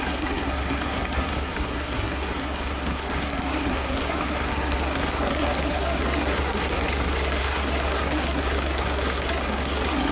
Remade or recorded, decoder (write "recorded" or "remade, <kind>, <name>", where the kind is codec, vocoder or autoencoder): remade, codec, SNAC